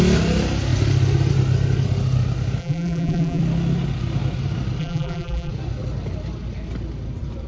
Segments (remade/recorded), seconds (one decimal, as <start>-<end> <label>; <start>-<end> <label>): 0.0-2.6 recorded; 2.6-3.4 remade; 3.4-4.8 recorded; 4.8-5.5 remade; 5.5-7.5 recorded